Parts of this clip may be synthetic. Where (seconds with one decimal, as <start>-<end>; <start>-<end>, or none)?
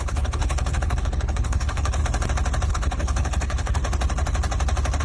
0.0-2.0; 2.7-3.8